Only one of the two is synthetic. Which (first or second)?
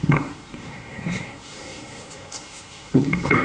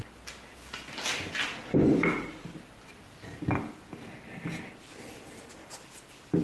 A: first